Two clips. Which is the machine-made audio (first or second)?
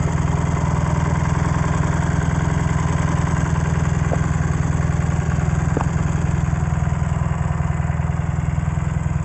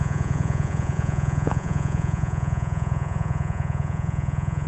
second